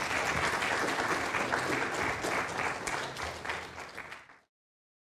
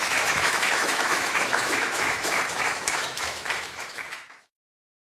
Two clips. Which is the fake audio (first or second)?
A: second